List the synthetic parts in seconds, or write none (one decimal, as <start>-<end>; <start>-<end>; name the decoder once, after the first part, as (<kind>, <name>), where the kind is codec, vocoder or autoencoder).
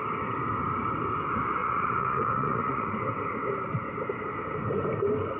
1.6-2.9 (vocoder, Vocos)